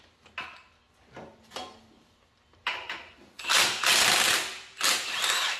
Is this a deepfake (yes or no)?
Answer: no